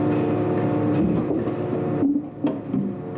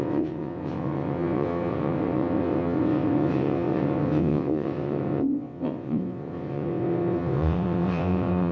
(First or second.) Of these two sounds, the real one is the first